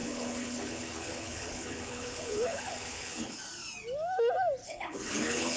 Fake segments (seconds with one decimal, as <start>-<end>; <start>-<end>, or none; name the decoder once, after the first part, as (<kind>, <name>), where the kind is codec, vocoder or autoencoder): 0.0-3.4 (codec, HILCodec); 4.6-5.6